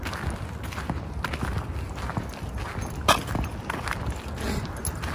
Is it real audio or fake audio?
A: real